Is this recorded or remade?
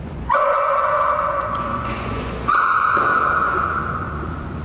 remade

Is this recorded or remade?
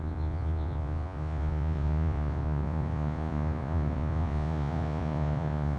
remade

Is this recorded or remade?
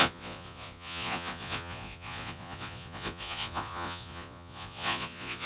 remade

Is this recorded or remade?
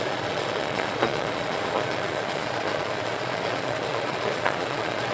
remade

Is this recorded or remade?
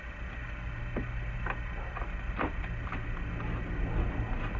recorded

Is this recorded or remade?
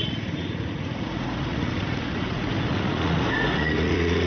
remade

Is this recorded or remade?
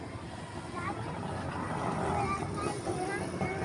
recorded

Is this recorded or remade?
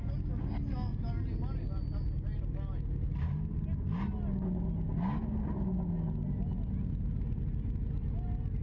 recorded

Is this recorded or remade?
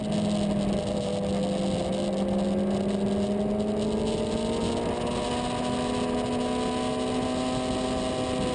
recorded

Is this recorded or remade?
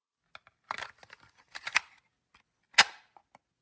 recorded